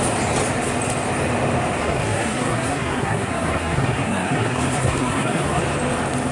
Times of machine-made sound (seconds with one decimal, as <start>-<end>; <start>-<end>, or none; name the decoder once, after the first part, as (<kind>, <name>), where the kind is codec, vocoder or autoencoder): 1.8-5.6 (codec, SNAC)